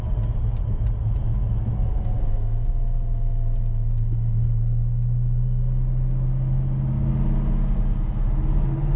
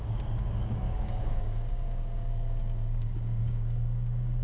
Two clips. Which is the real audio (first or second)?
first